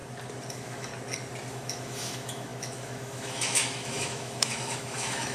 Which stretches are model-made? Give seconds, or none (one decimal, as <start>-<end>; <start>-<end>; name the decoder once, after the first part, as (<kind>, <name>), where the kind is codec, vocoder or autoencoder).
0.5-0.9 (autoencoder, DAC-VAE); 1.5-5.3